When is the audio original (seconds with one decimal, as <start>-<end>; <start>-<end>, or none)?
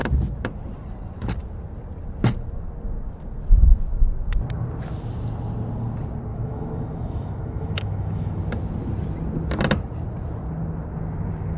0.0-6.3; 8.4-11.6